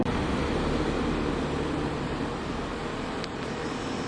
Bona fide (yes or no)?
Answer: yes